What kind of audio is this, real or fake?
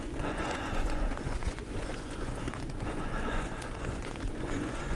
fake